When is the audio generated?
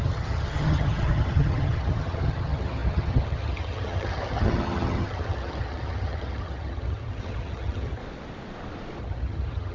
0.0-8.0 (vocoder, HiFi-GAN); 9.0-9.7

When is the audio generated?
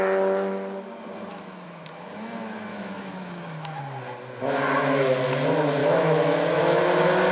1.3-2.0 (autoencoder, DAC-VAE); 2.7-3.8; 5.8-6.8